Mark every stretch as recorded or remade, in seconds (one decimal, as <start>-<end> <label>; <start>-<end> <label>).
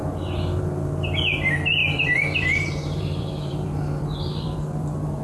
0.0-0.6 remade; 0.6-1.8 recorded; 1.8-5.2 remade